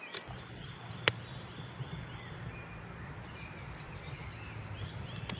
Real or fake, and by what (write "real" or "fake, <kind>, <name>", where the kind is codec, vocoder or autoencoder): fake, vocoder, BigVGAN v2